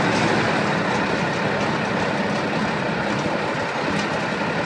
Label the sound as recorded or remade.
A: recorded